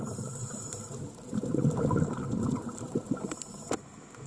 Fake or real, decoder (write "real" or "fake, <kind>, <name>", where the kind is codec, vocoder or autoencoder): fake, vocoder, BigVGAN v2